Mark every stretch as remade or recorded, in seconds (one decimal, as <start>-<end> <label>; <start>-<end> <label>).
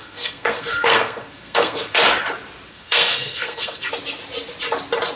0.0-2.0 remade; 2.0-2.7 recorded; 2.7-3.9 remade; 3.9-5.2 recorded